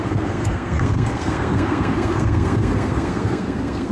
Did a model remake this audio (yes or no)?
yes